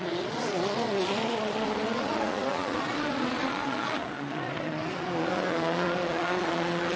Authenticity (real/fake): fake